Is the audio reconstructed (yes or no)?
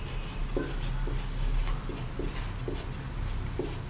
no